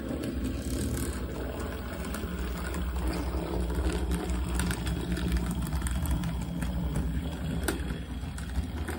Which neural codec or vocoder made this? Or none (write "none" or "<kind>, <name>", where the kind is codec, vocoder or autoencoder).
none